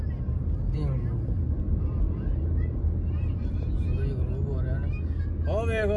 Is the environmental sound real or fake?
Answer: real